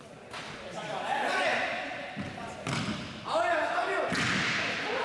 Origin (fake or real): real